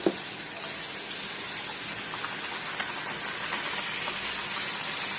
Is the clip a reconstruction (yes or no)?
no